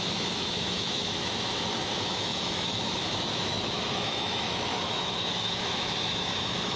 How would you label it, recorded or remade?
remade